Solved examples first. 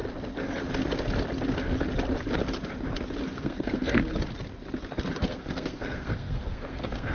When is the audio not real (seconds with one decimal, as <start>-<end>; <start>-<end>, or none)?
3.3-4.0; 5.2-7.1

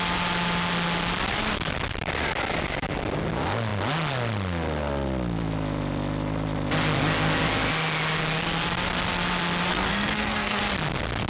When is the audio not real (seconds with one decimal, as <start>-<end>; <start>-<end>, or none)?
9.7-10.6

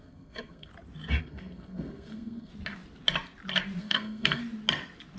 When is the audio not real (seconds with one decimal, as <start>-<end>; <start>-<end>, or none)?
0.0-0.7; 1.2-2.5; 3.8-4.4

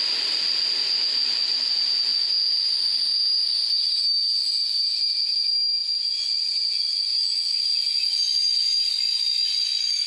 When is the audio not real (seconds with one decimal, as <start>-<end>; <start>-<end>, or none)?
none

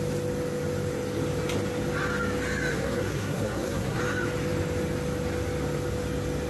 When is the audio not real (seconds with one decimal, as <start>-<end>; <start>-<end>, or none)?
2.7-4.0

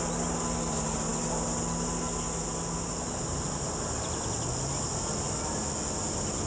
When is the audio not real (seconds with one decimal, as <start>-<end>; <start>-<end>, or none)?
none

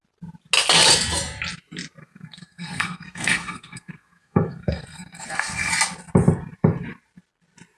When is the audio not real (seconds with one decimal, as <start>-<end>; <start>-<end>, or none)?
2.0-5.7

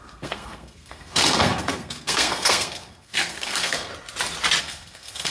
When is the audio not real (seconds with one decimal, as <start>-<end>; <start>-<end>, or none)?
0.0-3.9; 4.6-5.3